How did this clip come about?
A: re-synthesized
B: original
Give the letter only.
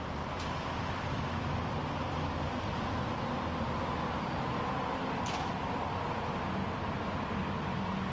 B